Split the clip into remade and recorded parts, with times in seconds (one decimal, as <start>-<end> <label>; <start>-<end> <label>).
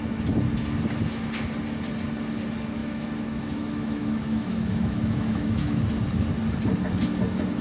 0.0-2.8 recorded; 2.8-5.9 remade; 5.9-7.6 recorded